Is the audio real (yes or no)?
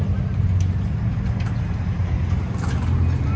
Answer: yes